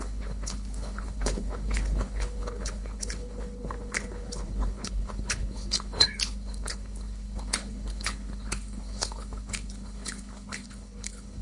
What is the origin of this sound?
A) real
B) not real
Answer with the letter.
B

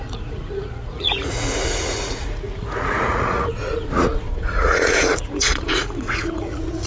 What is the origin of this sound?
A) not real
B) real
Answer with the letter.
A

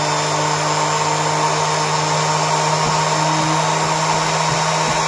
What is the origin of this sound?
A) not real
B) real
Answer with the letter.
B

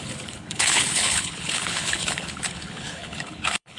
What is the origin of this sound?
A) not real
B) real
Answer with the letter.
A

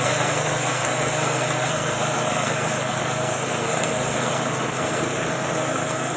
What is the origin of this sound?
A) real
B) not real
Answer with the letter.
B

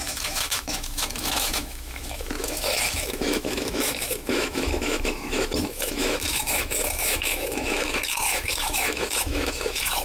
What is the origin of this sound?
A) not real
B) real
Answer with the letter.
A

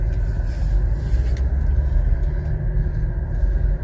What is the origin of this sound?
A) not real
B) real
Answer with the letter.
B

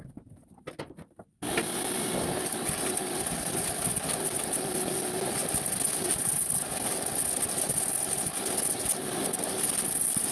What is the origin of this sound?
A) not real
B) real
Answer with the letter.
B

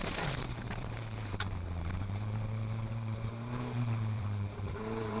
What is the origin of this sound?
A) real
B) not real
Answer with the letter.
B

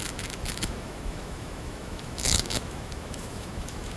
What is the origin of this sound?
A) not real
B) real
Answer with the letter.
A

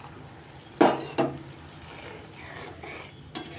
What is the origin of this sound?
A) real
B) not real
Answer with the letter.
A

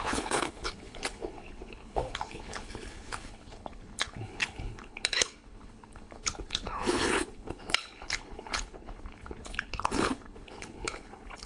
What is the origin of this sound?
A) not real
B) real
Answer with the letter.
A